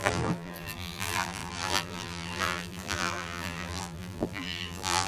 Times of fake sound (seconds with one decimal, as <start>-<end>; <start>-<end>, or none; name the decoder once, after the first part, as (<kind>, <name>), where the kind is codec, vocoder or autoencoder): 0.0-5.1 (vocoder, BigVGAN v2)